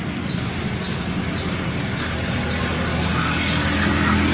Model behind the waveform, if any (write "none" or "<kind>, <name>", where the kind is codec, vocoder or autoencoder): none